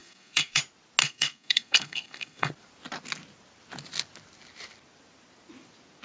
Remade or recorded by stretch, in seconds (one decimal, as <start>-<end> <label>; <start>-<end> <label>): 0.0-0.6 remade; 0.6-1.0 recorded; 1.0-2.5 remade; 2.5-6.0 recorded

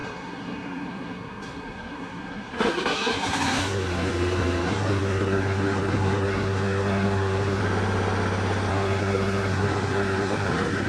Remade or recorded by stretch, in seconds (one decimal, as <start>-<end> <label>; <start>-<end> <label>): 0.0-7.6 remade; 7.6-8.7 recorded; 8.7-10.9 remade

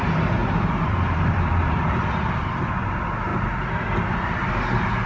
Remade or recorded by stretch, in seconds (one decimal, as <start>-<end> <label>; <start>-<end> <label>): 0.0-0.4 recorded; 0.4-2.3 remade; 2.3-3.3 recorded; 3.3-4.5 remade; 4.5-5.1 recorded

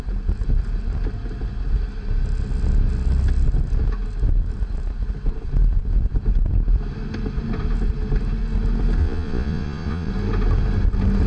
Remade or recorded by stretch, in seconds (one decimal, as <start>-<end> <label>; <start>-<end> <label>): 0.0-9.0 recorded; 9.0-10.1 remade; 10.1-11.3 recorded

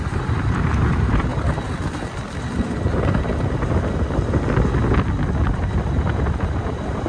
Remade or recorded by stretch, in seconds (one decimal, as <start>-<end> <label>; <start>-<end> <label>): 0.0-1.3 remade; 1.3-5.5 recorded; 5.5-7.1 remade

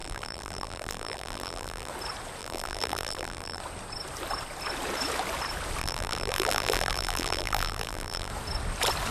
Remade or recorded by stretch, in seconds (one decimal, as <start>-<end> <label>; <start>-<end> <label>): 0.0-1.9 remade; 1.9-2.4 recorded; 2.4-3.6 remade; 3.6-5.8 recorded; 5.8-8.3 remade; 8.3-9.1 recorded

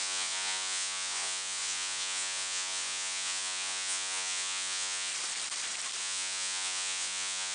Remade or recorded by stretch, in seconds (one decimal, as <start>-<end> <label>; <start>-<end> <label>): 0.0-5.1 remade; 5.1-6.0 recorded; 6.0-7.5 remade

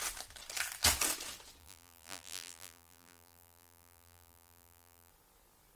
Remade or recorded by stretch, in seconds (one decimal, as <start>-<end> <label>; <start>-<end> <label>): 0.0-1.6 recorded; 1.6-5.1 remade; 5.1-5.8 recorded